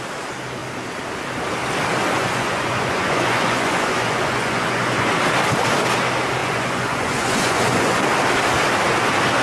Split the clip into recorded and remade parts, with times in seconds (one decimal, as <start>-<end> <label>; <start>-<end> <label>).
0.0-2.0 recorded; 2.0-5.1 remade; 5.1-6.4 recorded; 6.4-8.0 remade; 8.0-9.4 recorded